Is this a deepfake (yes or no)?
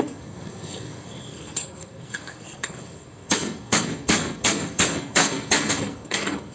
yes